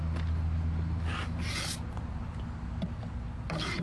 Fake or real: real